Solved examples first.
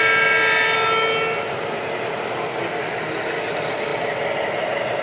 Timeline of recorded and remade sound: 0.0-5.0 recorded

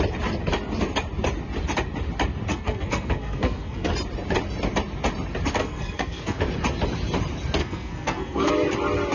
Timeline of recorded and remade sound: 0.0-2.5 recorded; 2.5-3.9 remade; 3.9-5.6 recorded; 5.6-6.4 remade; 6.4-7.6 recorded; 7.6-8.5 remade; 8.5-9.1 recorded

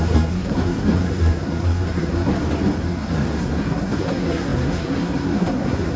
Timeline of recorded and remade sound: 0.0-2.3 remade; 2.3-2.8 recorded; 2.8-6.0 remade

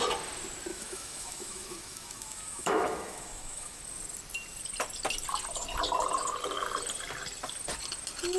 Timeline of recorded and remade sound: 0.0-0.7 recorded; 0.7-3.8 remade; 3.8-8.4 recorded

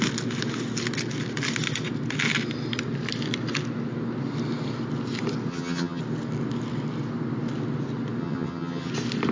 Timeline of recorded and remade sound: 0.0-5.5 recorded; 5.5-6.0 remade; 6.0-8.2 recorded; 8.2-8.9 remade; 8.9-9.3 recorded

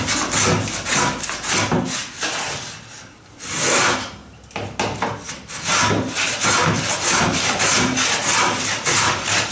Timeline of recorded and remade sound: 0.0-9.5 recorded